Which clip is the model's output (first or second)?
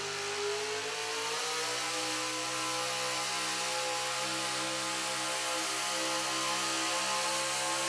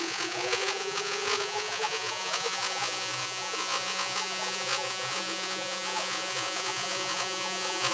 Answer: second